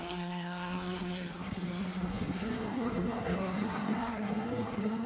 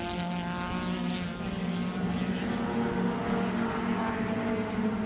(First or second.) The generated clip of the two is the first